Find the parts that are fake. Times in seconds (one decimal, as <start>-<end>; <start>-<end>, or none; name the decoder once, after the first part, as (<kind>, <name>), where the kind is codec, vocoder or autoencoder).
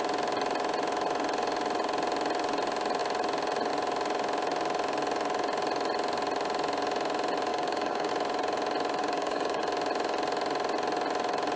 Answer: 7.5-8.1 (codec, DAC); 9.0-9.6